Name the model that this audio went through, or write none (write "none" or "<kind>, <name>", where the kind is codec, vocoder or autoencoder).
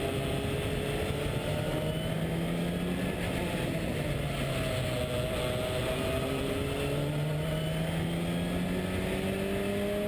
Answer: none